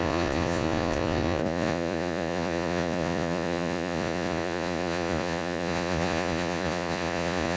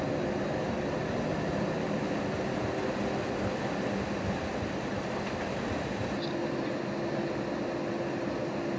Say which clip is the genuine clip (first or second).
second